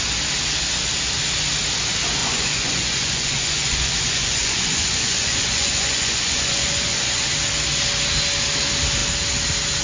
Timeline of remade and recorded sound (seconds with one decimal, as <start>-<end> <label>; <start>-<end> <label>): 0.0-2.2 recorded; 2.2-7.3 remade; 7.3-9.8 recorded